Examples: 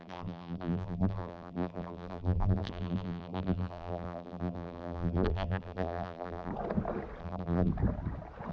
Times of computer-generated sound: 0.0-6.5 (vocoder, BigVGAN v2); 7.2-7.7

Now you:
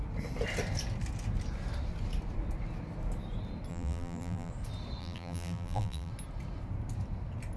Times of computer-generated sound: 3.7-4.5 (vocoder, BigVGAN v2); 5.0-6.1

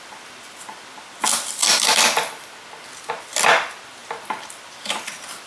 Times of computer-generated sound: 0.0-1.6 (vocoder, BigVGAN v2); 3.1-4.0; 4.5-5.5